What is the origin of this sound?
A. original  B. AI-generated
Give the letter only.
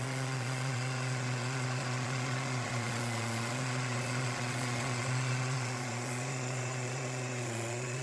B